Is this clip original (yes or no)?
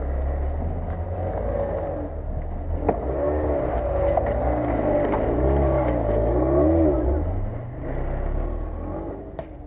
yes